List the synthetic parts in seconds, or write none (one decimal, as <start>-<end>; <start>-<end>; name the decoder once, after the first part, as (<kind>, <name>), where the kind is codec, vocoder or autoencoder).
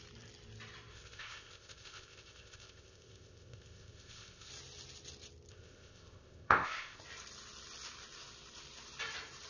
0.9-4.5 (codec, ZipCodec); 5.5-7.0